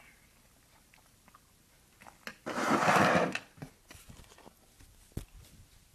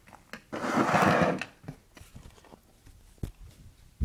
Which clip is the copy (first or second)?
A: first